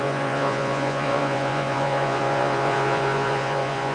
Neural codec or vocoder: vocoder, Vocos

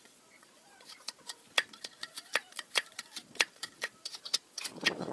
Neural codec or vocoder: vocoder, Vocos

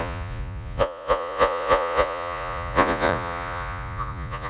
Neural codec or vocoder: vocoder, Vocos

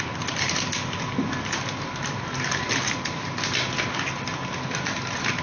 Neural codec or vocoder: none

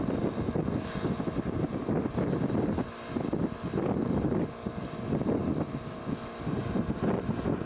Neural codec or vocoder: none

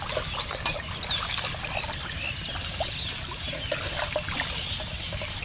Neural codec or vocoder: none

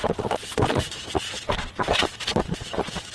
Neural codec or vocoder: vocoder, Vocos